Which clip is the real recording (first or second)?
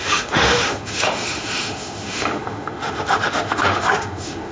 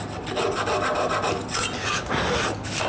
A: second